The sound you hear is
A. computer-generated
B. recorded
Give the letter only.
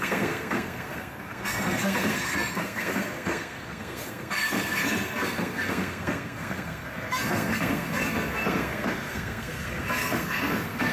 A